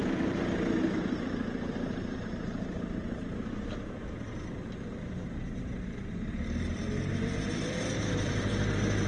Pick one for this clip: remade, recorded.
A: remade